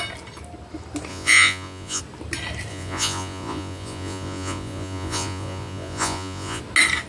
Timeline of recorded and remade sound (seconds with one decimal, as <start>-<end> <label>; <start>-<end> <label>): 0.0-1.1 recorded; 1.1-2.0 remade; 2.0-2.7 recorded; 2.7-6.6 remade; 6.6-7.1 recorded